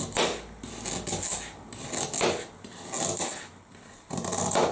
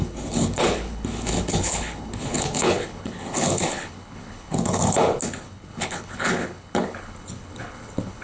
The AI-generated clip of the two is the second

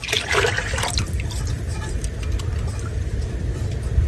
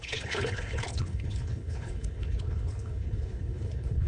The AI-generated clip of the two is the second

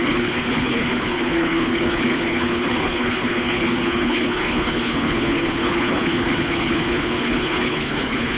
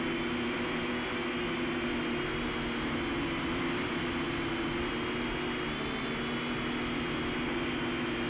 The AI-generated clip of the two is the first